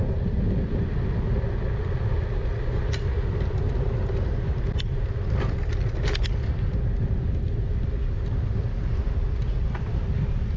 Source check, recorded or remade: recorded